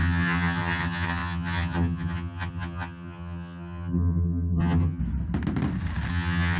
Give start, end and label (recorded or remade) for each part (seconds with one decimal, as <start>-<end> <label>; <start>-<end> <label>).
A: 0.0-5.0 remade; 5.0-6.1 recorded; 6.1-6.6 remade